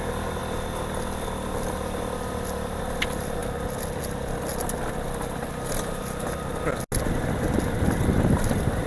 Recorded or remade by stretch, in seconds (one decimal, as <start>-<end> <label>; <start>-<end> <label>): 0.0-8.9 recorded